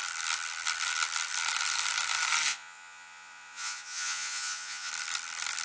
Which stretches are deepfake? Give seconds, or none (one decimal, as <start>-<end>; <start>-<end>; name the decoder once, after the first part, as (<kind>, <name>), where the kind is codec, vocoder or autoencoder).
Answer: 2.5-4.9 (vocoder, Vocos)